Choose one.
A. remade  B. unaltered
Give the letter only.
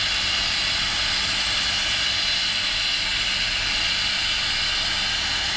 B